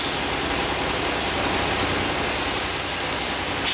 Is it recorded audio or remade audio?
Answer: recorded